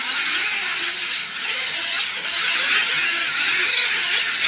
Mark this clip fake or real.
fake